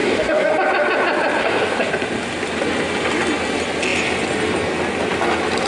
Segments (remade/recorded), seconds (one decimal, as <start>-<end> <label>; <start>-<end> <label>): 0.0-0.5 remade; 0.5-1.4 recorded; 1.4-1.9 remade; 1.9-5.7 recorded